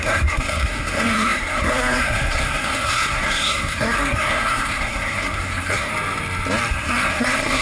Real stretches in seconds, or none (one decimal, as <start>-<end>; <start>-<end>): 5.9-6.7